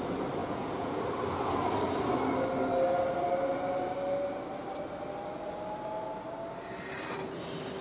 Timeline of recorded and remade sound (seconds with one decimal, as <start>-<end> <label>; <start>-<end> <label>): 0.0-0.4 recorded; 0.4-1.0 remade; 1.0-7.8 recorded